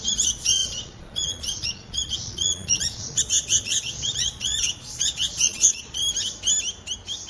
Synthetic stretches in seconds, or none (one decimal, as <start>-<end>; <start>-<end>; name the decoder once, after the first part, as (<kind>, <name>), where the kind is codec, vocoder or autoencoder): 0.0-6.0 (vocoder, Vocos)